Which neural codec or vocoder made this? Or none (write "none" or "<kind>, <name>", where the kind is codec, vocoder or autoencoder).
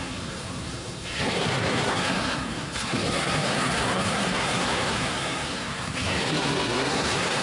codec, SNAC